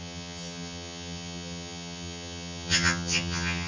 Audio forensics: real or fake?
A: fake